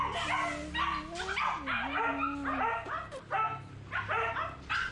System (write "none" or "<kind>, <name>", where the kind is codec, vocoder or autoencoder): none